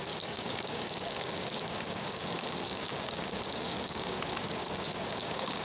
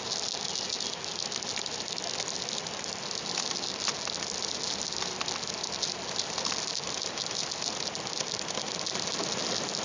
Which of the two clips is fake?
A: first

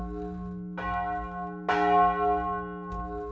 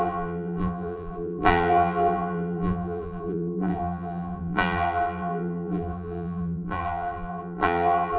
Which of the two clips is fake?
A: second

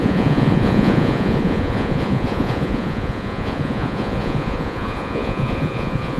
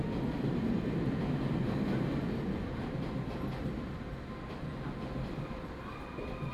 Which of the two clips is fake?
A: first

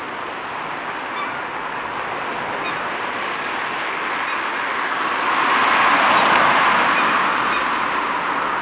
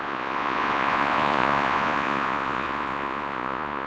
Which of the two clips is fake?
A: second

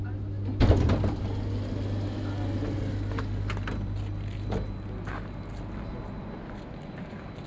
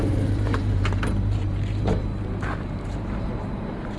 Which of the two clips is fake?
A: second